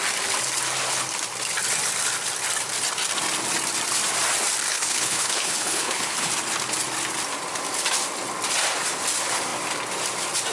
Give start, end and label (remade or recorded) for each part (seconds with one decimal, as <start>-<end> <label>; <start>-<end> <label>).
0.0-4.7 recorded; 4.7-6.3 remade; 6.3-10.5 recorded